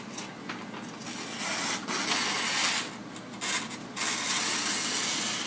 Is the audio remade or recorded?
recorded